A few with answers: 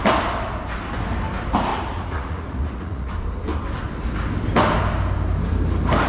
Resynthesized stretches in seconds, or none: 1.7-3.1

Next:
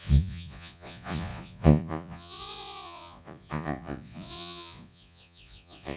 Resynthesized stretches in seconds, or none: 0.0-6.0

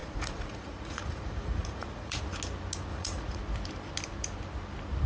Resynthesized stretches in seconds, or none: 0.0-2.2; 2.9-3.4

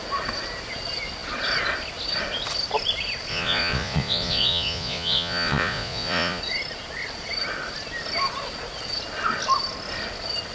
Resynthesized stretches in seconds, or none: 3.3-6.4

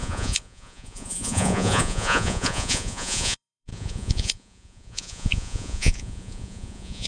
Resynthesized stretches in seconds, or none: 0.0-7.1

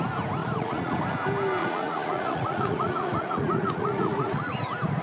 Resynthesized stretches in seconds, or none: 0.4-1.0; 1.6-4.6

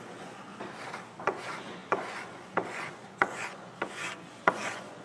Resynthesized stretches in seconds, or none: 0.0-0.5; 1.2-5.0

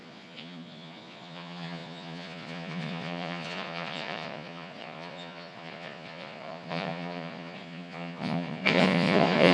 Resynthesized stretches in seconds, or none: 0.0-9.5